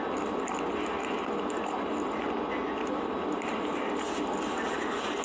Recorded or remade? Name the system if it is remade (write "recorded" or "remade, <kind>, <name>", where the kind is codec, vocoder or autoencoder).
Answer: recorded